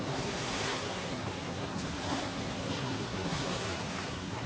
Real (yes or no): no